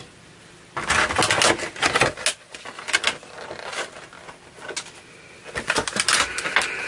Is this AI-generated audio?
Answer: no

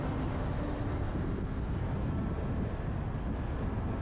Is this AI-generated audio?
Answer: no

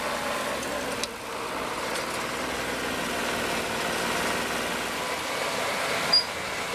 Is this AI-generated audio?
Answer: no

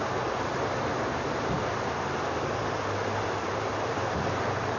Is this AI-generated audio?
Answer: no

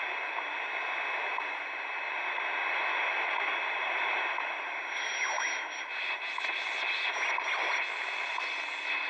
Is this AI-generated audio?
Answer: no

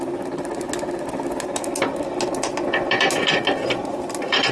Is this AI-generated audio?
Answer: no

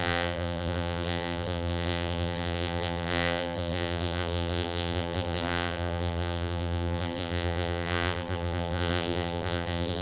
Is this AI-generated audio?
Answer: yes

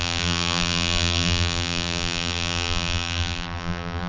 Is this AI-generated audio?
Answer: yes